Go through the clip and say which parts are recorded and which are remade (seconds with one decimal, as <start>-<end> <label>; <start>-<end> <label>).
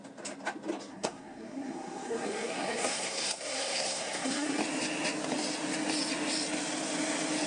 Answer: 0.0-0.9 recorded; 0.9-4.6 remade; 4.6-7.5 recorded